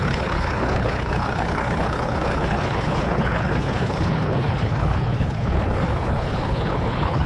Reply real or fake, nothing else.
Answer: fake